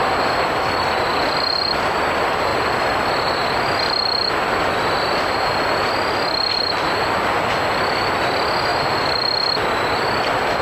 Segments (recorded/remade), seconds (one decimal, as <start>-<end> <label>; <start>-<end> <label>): 0.0-10.6 recorded